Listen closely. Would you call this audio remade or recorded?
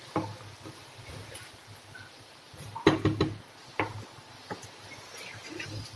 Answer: recorded